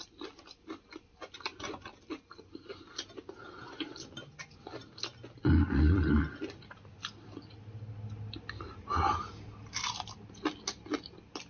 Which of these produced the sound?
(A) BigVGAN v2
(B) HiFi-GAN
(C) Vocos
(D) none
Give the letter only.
D